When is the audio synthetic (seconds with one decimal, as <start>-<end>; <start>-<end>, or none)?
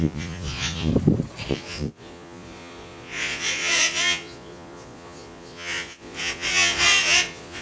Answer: 0.0-0.9; 1.5-7.6